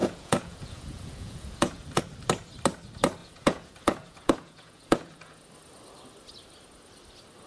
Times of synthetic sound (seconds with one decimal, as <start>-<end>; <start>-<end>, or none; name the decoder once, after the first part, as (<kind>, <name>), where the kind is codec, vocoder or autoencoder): 0.0-2.0 (vocoder, Vocos); 3.2-5.4